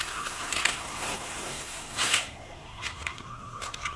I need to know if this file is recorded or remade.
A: remade